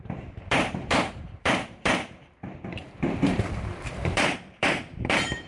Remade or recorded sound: remade